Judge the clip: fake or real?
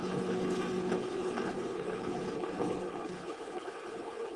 fake